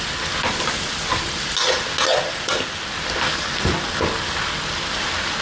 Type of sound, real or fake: real